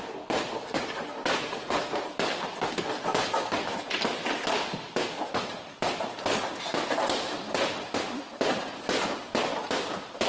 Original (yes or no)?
yes